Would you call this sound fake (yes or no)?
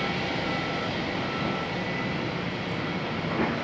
no